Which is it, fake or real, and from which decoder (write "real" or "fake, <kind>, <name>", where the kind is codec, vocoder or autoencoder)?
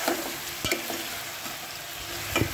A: real